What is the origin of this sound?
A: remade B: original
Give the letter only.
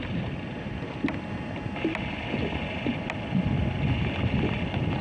B